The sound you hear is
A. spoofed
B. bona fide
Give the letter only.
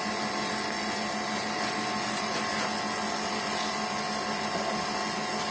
B